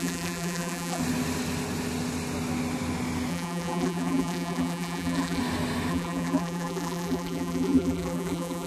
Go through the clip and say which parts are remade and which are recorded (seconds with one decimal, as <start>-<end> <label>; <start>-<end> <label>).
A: 0.0-1.0 remade; 1.0-3.3 recorded; 3.3-5.4 remade; 5.4-5.9 recorded; 5.9-8.7 remade